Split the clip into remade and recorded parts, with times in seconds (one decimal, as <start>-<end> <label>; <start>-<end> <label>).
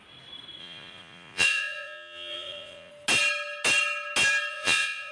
0.0-0.6 recorded; 0.6-2.9 remade; 2.9-4.5 recorded; 4.5-5.1 remade